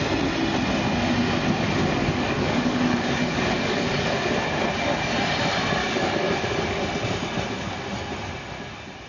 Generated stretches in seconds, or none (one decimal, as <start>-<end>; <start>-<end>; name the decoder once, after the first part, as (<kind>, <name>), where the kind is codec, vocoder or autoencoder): 2.0-4.3 (codec, DAC); 5.8-6.8